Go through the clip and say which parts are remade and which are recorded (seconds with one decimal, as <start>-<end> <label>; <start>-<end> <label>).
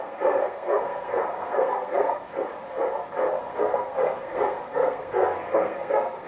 0.0-2.5 remade; 2.5-3.5 recorded; 3.5-6.3 remade